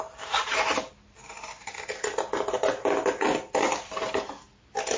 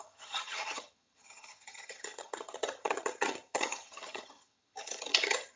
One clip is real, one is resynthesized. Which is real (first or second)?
first